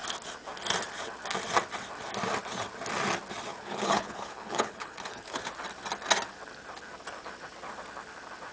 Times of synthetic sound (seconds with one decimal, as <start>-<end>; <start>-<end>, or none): 3.5-5.5

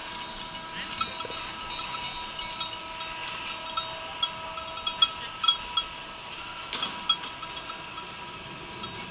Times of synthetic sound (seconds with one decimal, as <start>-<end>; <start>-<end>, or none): none

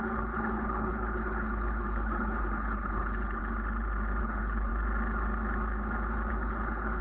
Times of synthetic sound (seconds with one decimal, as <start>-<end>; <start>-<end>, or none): 0.0-3.4; 4.2-4.7; 6.3-7.0

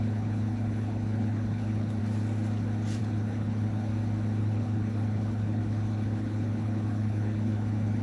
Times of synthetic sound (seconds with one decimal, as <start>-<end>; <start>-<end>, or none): 0.0-2.0; 3.0-3.9; 4.4-8.0

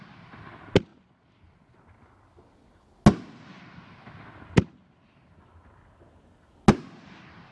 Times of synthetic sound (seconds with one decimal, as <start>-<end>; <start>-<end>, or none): none

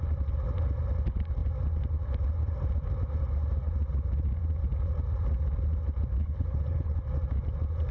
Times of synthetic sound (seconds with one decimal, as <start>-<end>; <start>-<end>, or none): 6.2-7.0

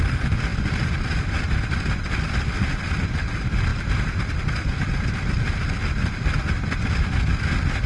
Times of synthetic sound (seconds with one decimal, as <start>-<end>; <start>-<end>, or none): none